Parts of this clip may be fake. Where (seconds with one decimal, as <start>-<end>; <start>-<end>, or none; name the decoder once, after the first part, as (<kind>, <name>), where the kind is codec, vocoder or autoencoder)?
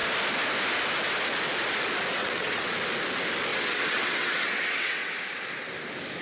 2.2-2.7 (vocoder, WaveNeXt); 3.5-5.1